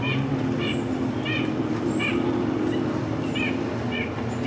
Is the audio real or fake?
real